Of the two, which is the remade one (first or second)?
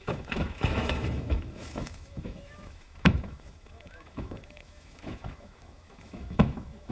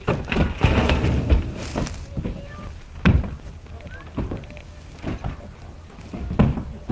first